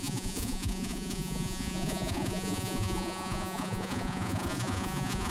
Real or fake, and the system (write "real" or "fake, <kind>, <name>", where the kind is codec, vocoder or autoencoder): fake, vocoder, Vocos